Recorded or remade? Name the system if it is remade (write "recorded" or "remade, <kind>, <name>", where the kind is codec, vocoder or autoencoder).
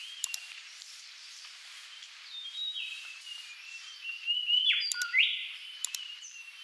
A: remade, vocoder, BigVGAN v2